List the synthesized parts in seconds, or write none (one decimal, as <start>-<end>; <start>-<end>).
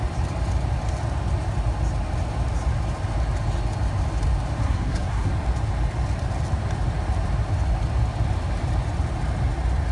4.6-5.3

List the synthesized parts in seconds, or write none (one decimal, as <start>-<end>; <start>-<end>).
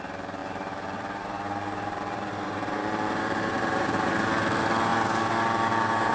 0.4-4.1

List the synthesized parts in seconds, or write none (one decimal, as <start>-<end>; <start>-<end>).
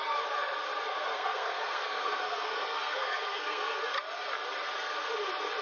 0.9-3.8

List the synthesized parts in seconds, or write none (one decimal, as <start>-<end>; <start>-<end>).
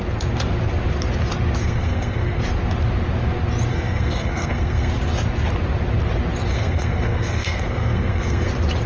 1.6-2.4; 3.7-4.9; 6.5-8.5